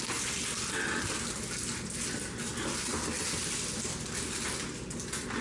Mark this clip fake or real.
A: real